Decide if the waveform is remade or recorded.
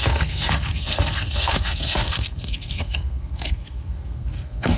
remade